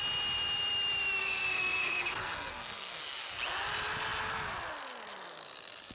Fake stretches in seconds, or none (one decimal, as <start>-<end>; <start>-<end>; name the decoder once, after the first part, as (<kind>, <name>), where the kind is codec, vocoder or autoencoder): 1.2-3.0 (codec, SNAC)